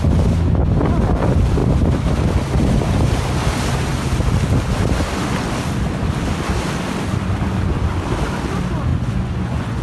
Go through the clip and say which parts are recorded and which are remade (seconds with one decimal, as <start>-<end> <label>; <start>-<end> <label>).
0.0-8.9 recorded; 8.9-9.8 remade

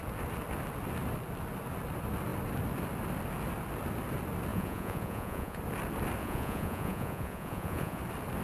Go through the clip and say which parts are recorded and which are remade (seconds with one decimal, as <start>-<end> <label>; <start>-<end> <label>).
0.0-4.5 recorded; 4.5-5.6 remade; 5.6-6.2 recorded; 6.2-8.0 remade; 8.0-8.4 recorded

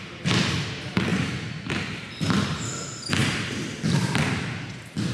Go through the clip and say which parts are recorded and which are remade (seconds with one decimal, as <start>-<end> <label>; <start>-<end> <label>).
0.0-1.1 recorded; 1.1-1.7 remade; 1.7-5.1 recorded

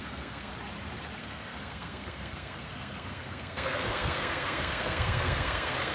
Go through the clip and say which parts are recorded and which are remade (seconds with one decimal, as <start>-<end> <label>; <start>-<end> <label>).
0.0-0.5 remade; 0.5-1.2 recorded; 1.2-5.9 remade

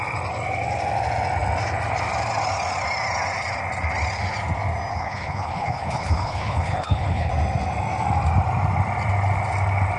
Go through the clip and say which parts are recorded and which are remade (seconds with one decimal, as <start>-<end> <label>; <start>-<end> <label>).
0.0-4.9 recorded; 4.9-7.3 remade; 7.3-10.0 recorded